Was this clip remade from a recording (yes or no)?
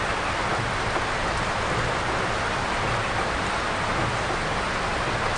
no